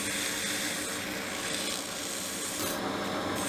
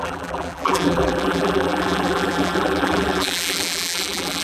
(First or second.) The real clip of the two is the first